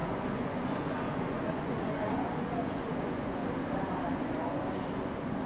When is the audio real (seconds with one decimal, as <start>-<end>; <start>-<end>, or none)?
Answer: 3.4-4.1